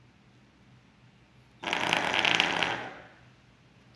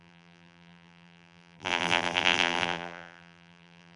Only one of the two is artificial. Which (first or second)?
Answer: second